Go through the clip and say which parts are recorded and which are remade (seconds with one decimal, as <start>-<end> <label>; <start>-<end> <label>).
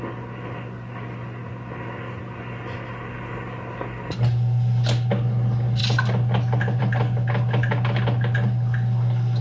0.0-9.4 recorded